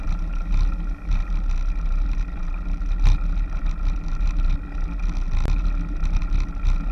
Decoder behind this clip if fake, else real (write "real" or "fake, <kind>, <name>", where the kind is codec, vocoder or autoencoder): real